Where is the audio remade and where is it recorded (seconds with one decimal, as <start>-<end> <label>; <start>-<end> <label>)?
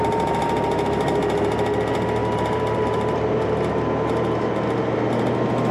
0.0-2.2 recorded; 2.2-3.7 remade; 3.7-5.7 recorded